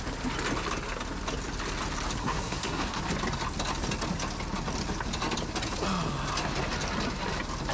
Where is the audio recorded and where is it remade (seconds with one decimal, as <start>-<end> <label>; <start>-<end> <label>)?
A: 0.0-2.2 recorded; 2.2-3.0 remade; 3.0-7.7 recorded